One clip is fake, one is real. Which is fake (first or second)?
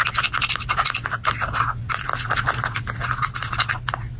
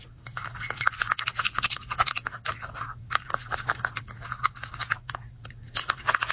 second